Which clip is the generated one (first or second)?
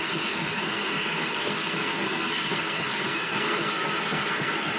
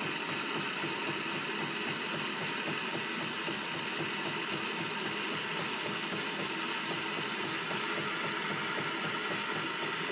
first